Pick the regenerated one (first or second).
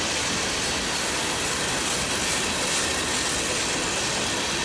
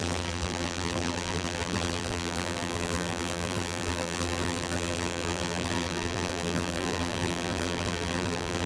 second